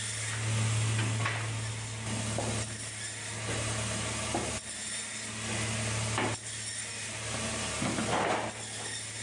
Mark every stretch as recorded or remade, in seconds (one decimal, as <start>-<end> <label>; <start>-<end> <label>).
0.0-9.2 recorded